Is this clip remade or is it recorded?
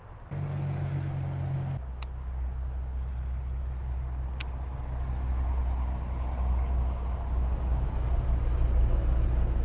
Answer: recorded